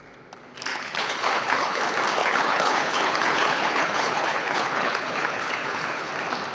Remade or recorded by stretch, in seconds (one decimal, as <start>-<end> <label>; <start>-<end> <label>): 0.0-0.7 recorded; 0.7-1.8 remade; 1.8-2.2 recorded; 2.2-6.1 remade; 6.1-6.5 recorded